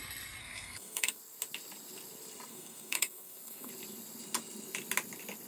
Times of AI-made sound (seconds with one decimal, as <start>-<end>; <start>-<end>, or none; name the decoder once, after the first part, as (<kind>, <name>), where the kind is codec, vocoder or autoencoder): 0.4-1.2 (codec, SNAC); 2.5-3.7